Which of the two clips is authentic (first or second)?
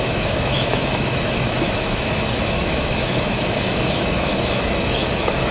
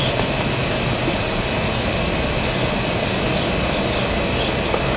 second